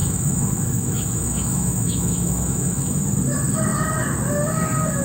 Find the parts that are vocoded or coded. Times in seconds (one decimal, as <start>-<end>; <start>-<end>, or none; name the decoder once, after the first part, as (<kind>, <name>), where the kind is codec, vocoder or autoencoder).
0.0-3.0 (autoencoder, DAC-VAE)